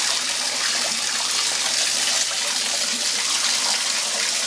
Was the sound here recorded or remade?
recorded